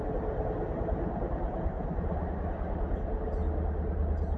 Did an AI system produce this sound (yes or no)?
no